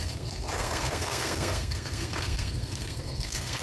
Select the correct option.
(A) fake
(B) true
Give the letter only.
A